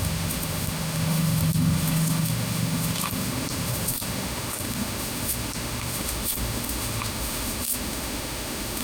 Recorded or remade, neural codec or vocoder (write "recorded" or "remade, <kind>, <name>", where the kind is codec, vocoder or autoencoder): remade, autoencoder, DAC-VAE